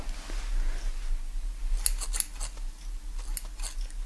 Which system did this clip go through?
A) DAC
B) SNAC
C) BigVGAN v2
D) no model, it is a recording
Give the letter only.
D